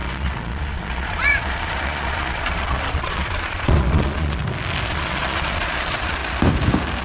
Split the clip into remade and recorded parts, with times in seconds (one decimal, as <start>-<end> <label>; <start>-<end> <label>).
0.0-4.4 remade; 4.4-4.9 recorded; 4.9-6.2 remade; 6.2-7.0 recorded